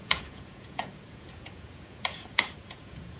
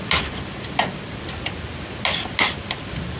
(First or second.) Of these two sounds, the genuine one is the second